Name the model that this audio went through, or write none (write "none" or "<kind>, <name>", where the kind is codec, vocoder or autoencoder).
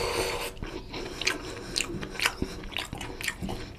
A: none